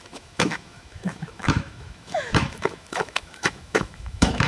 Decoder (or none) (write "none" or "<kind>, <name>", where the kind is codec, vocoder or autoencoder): autoencoder, DAC-VAE